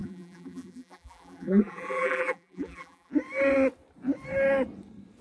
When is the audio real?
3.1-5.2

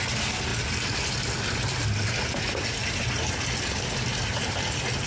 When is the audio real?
0.0-5.1

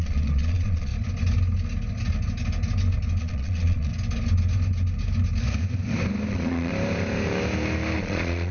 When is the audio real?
0.9-3.2; 3.9-6.3; 6.7-8.0

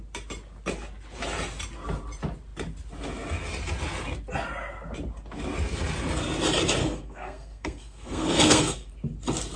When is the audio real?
0.0-6.8; 8.9-9.6

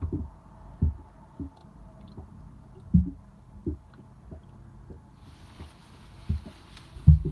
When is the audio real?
0.0-5.8; 6.4-7.3